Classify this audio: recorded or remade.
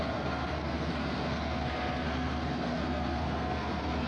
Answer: remade